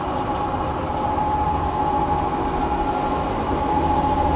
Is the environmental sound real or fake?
real